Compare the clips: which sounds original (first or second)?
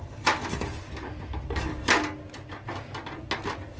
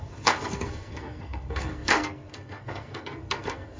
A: first